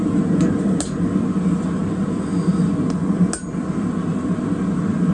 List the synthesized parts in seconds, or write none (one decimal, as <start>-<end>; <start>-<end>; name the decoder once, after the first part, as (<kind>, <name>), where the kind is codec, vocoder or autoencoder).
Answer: none